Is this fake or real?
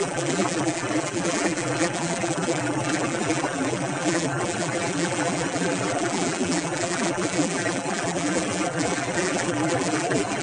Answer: fake